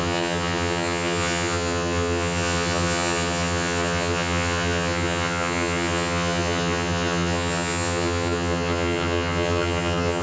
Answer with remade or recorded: remade